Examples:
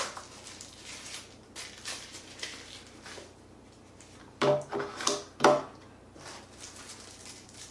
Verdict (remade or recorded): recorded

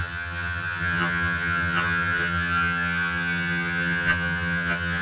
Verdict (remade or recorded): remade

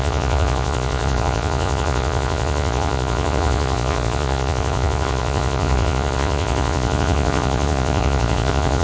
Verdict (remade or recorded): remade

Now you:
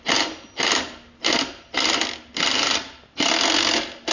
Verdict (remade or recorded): recorded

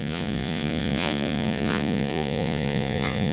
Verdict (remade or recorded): remade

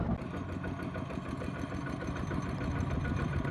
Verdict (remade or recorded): recorded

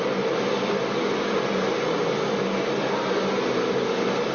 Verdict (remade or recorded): recorded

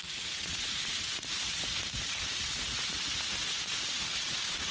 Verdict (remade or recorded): remade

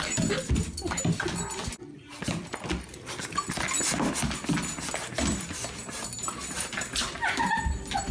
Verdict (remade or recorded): recorded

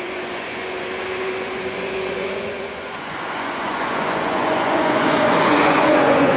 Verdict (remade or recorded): remade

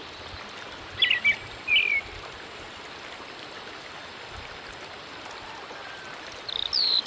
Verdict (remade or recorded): recorded